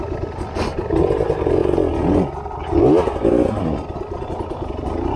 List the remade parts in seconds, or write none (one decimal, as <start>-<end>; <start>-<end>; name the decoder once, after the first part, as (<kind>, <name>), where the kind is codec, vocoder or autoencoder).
none